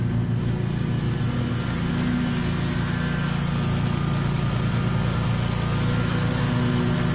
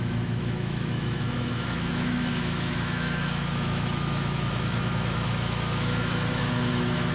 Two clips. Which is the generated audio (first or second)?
second